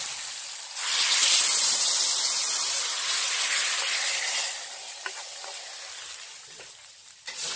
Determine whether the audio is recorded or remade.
recorded